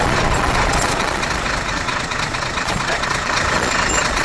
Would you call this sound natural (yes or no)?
no